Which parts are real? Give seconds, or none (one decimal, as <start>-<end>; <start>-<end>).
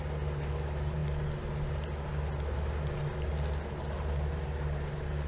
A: 0.0-5.3